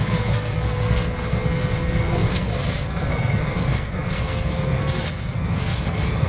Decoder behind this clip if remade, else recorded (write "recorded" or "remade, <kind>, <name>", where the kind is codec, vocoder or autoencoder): remade, codec, SNAC